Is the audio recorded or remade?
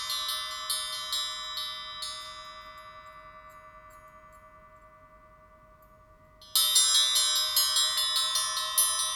recorded